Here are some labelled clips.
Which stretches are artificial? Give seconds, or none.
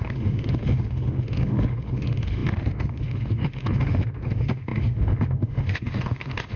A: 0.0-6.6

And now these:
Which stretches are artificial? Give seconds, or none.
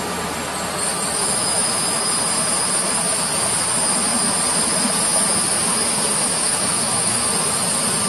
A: 1.2-2.0; 6.3-7.2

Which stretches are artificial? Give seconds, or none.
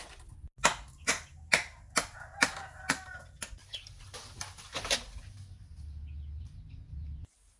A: none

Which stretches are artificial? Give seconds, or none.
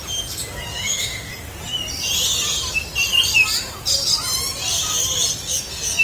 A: 0.7-1.3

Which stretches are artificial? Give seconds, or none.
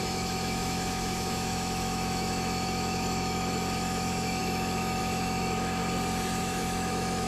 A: 0.0-5.8; 6.4-7.3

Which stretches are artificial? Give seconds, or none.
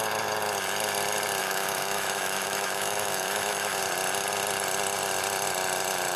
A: 1.4-3.8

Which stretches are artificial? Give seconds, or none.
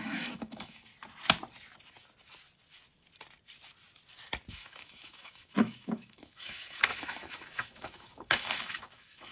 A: 0.0-0.9; 4.5-9.3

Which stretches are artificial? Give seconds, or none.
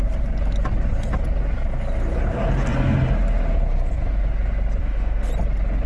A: 4.8-5.3